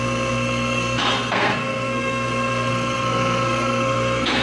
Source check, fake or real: fake